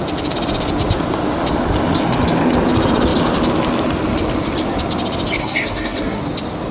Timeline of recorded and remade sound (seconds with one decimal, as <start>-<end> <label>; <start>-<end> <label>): 0.0-5.4 recorded; 5.4-6.2 remade; 6.2-6.7 recorded